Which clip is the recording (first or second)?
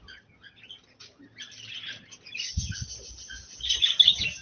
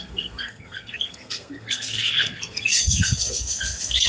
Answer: first